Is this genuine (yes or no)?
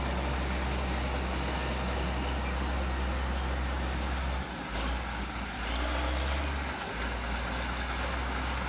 yes